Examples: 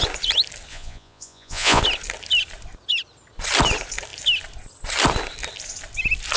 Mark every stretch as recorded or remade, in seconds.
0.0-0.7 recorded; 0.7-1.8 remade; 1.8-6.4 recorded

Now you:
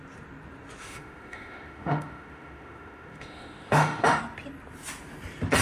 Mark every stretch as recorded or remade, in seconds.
0.0-0.8 recorded; 0.8-4.2 remade; 4.2-5.6 recorded

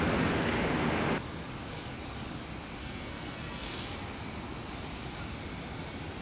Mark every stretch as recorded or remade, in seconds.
0.0-2.8 recorded; 2.8-3.8 remade; 3.8-6.2 recorded

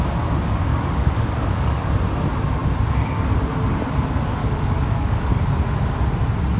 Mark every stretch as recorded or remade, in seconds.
0.0-0.7 recorded; 0.7-1.9 remade; 1.9-4.4 recorded; 4.4-5.4 remade; 5.4-6.6 recorded

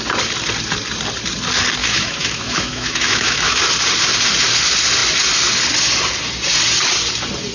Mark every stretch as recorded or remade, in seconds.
0.0-1.8 recorded; 1.8-3.6 remade; 3.6-7.5 recorded

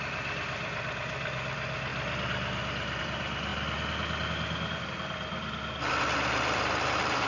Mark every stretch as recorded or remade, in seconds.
0.0-1.9 remade; 1.9-3.0 recorded; 3.0-3.5 remade; 3.5-4.8 recorded; 4.8-7.3 remade